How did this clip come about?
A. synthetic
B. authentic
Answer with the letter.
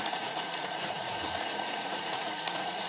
A